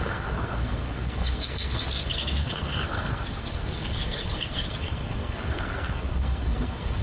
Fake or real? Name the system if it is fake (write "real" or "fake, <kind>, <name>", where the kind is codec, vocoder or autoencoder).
fake, codec, SNAC